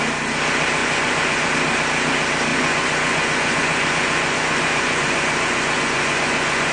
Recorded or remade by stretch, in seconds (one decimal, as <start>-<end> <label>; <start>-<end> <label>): 0.0-0.8 recorded; 0.8-1.5 remade; 1.5-2.5 recorded; 2.5-6.7 remade